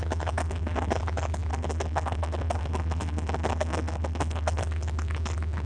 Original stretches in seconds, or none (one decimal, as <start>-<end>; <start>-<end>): 0.0-0.4; 0.9-1.5; 4.6-5.7

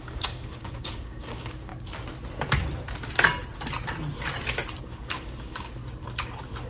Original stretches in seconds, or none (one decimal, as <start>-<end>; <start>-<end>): 1.7-4.8; 5.8-6.7

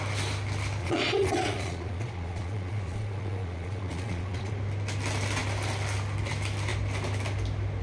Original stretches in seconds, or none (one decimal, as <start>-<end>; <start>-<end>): 0.0-0.8; 4.5-7.8

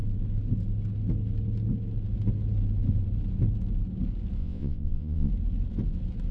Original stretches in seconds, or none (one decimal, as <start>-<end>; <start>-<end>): 0.0-4.4; 5.3-6.3

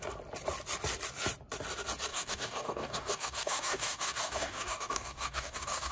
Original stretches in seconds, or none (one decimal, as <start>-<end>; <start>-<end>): 0.0-2.1

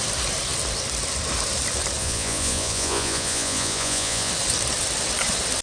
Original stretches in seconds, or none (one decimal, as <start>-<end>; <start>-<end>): 0.0-2.0; 4.3-5.6

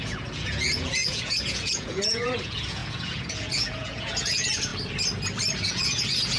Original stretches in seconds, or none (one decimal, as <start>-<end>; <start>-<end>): 4.7-5.7

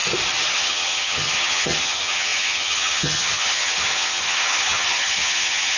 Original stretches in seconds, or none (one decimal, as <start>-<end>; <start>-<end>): 0.0-0.5